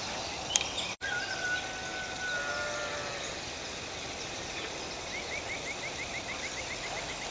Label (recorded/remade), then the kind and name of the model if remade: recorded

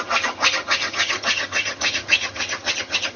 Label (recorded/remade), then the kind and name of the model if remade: remade, vocoder, HiFi-GAN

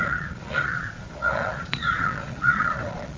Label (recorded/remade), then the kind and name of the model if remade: remade, vocoder, Vocos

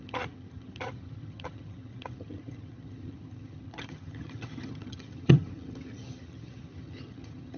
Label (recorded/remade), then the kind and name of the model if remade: remade, vocoder, HiFi-GAN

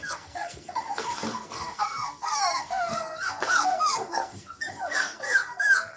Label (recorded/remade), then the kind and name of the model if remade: remade, codec, SNAC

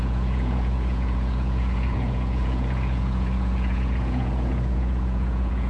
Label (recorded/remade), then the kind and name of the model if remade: remade, vocoder, Vocos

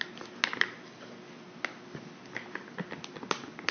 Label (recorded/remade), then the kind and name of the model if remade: recorded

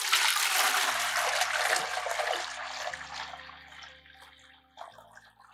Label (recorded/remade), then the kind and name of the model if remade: recorded